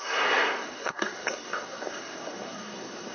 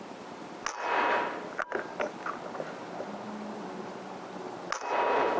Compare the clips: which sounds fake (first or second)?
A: first